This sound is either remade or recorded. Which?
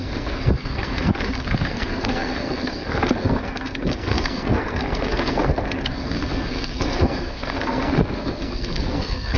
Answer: remade